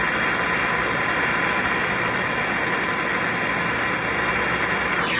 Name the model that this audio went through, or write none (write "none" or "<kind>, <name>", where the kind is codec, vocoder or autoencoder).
none